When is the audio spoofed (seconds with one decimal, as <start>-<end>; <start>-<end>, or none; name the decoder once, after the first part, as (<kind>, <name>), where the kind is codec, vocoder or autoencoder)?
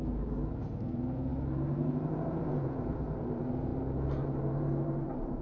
0.0-5.4 (vocoder, BigVGAN v2)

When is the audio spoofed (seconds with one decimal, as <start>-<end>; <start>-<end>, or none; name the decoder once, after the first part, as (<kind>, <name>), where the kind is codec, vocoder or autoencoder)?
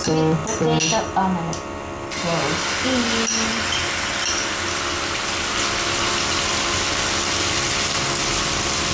none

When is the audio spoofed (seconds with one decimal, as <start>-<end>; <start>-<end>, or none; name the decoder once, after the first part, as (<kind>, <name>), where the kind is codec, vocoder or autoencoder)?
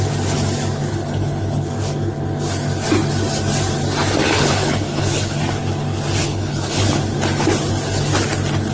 0.9-1.7 (codec, HILCodec); 4.2-5.4; 6.2-7.0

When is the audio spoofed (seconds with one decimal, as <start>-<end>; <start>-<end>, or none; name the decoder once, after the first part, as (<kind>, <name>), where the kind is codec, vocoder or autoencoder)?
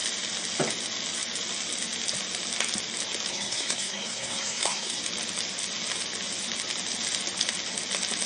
3.3-5.0 (codec, SNAC)